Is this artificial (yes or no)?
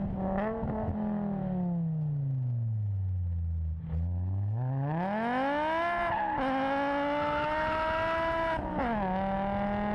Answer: no